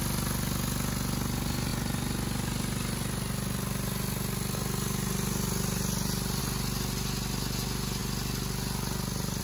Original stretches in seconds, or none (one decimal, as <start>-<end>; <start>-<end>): 0.0-9.4